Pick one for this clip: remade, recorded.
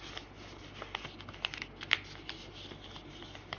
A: recorded